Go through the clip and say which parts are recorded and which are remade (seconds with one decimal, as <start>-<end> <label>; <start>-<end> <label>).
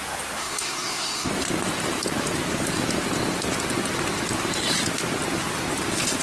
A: 0.0-0.4 recorded; 0.4-1.3 remade; 1.3-6.2 recorded